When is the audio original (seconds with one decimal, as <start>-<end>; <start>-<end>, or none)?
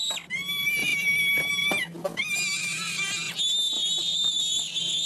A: 0.0-3.8; 4.4-5.1